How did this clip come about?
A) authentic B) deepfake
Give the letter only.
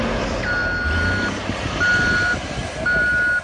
A